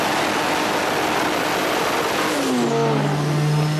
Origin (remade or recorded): recorded